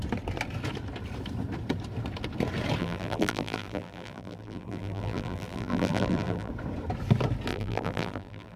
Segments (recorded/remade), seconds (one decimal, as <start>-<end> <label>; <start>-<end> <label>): 0.0-2.8 recorded; 2.8-6.5 remade; 6.5-7.5 recorded; 7.5-8.6 remade